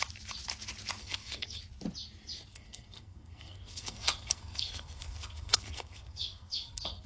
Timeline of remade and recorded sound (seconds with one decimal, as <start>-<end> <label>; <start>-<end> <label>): 0.0-1.0 recorded; 1.0-1.6 remade; 1.6-2.5 recorded; 2.5-7.1 remade